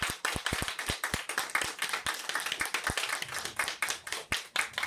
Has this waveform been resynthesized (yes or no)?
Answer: no